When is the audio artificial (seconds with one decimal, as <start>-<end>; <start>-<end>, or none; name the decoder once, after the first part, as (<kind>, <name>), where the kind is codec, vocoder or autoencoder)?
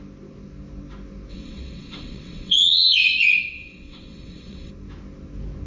1.3-4.7 (vocoder, WaveNeXt)